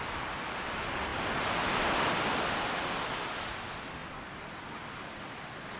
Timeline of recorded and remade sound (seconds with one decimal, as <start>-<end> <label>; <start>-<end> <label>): 0.0-5.8 recorded